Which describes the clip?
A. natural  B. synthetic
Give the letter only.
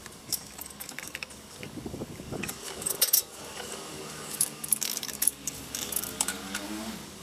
B